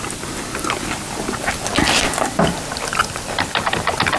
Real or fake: real